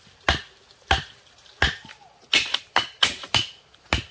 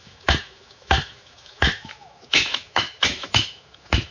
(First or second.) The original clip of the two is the first